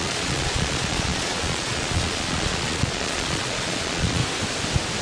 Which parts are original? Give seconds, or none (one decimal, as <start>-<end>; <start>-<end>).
4.2-5.0